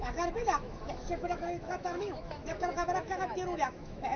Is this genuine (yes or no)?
no